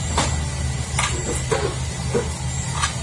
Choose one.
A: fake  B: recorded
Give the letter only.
B